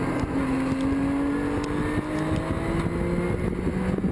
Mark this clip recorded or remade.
recorded